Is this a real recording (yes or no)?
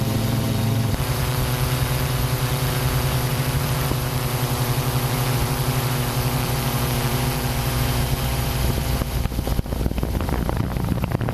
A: no